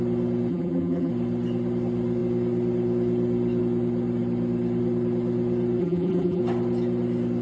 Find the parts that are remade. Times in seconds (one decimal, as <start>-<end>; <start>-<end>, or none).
0.5-1.1; 5.8-6.4